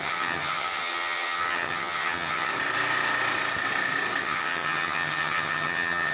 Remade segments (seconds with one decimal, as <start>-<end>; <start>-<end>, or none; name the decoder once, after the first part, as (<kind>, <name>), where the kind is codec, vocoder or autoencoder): 0.0-2.5 (vocoder, HiFi-GAN); 4.2-6.1